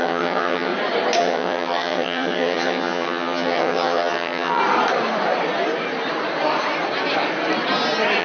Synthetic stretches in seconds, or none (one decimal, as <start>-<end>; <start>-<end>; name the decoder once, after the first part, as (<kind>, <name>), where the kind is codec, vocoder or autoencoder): 0.0-0.7 (vocoder, HiFi-GAN); 1.2-4.6